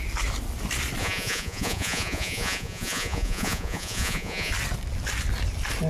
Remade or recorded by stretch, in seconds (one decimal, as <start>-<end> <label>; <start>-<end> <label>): 0.0-1.0 recorded; 1.0-4.5 remade; 4.5-5.9 recorded